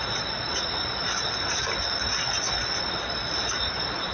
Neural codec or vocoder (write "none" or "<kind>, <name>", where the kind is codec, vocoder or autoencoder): none